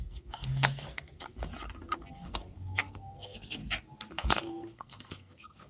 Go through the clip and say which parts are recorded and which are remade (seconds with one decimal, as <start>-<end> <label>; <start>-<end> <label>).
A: 0.0-1.5 remade; 1.5-2.1 recorded; 2.1-3.6 remade; 3.6-4.1 recorded; 4.1-5.7 remade